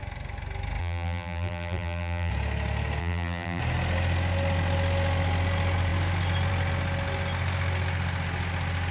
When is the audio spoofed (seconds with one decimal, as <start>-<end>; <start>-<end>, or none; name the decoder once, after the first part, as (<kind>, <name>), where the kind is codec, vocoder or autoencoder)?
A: 0.8-2.3 (vocoder, BigVGAN v2); 3.0-3.6